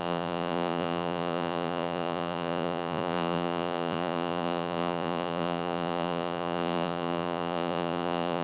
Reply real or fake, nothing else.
fake